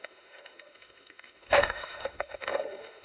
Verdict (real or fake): fake